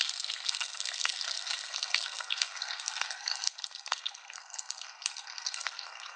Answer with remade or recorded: remade